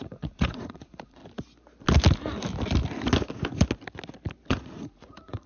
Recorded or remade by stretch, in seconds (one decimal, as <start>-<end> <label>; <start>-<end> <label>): 0.0-1.2 remade; 1.2-4.5 recorded; 4.5-5.5 remade